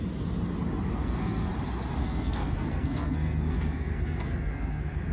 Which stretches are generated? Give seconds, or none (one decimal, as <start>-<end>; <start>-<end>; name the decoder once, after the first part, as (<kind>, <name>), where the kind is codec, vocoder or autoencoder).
0.9-1.5 (codec, SNAC); 2.0-5.1